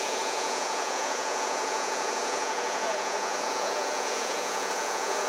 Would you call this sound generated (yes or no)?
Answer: yes